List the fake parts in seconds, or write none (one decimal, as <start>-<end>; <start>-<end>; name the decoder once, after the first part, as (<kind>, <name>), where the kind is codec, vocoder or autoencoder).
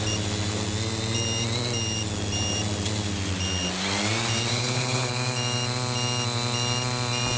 4.5-5.1 (codec, HILCodec)